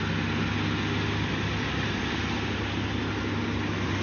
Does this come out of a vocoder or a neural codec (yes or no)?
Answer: no